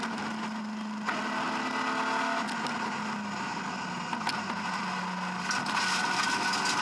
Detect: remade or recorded recorded